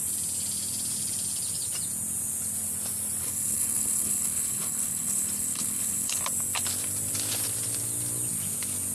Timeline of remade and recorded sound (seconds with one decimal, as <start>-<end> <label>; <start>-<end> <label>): 0.0-3.2 recorded; 3.2-6.2 remade; 6.2-8.9 recorded